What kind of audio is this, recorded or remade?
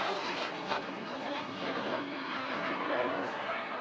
remade